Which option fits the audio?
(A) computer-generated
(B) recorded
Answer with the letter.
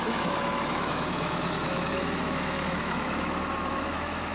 A